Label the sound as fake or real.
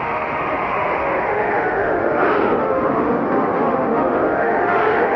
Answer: fake